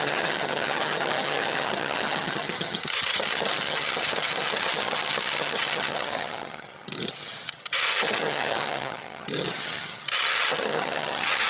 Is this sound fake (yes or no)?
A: yes